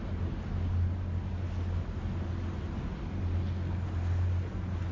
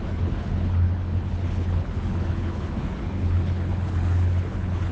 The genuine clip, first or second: first